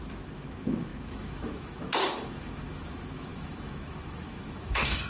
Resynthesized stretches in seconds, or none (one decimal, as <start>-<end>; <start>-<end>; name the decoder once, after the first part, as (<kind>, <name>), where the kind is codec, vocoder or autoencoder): 0.0-5.1 (autoencoder, DAC-VAE)